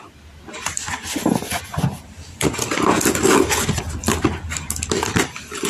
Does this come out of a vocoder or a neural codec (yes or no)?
no